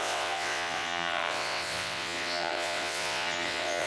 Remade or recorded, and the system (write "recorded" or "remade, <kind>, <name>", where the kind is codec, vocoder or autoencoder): remade, vocoder, WaveNeXt